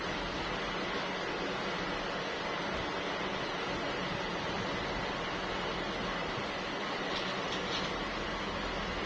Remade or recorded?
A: recorded